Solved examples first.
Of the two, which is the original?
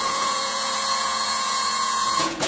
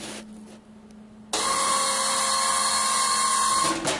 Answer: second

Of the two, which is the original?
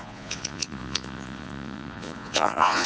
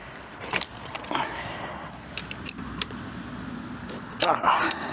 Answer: second